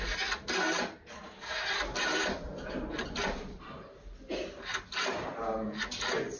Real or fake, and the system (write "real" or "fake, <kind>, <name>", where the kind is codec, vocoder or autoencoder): real